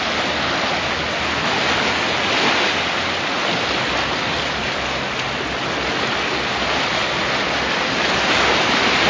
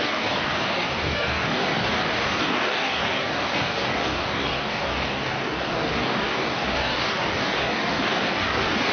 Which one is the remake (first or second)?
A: second